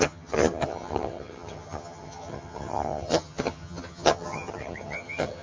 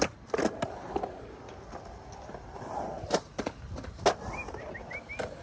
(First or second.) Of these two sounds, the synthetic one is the first